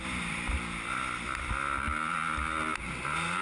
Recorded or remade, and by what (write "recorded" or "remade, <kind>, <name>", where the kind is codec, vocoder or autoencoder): recorded